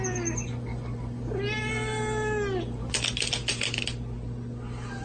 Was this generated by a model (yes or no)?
no